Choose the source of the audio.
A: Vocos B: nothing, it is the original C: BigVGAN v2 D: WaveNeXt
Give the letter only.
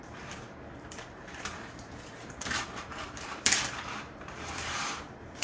C